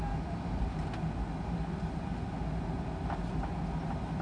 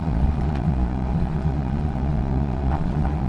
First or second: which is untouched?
first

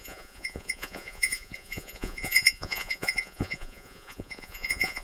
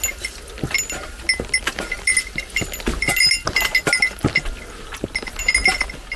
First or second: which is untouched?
second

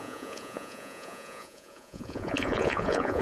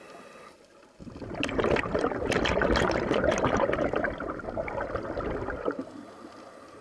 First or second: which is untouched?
second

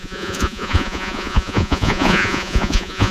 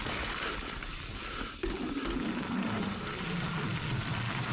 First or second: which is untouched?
second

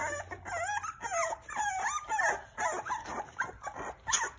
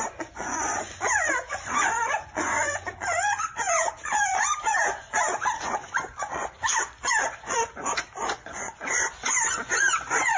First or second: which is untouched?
first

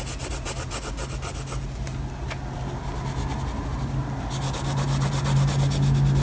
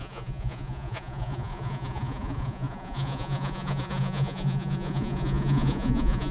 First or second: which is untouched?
first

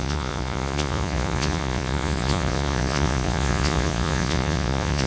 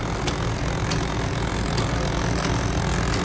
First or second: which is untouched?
second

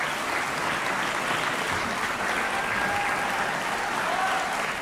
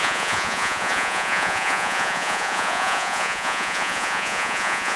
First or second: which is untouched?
first